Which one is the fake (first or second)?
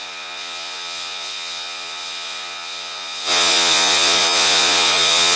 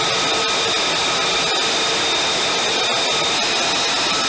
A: first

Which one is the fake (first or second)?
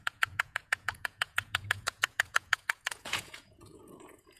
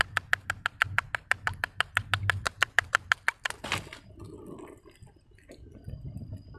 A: first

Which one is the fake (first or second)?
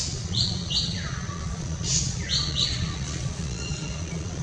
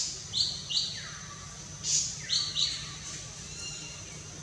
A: first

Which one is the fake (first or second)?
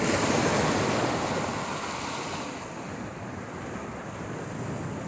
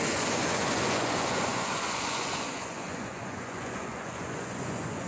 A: second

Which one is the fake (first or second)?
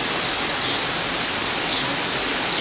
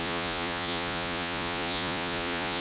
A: second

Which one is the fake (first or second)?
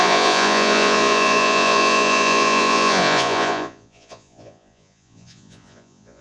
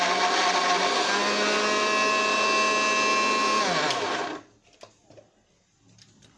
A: first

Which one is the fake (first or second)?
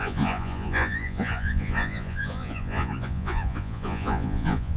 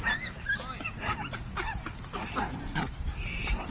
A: first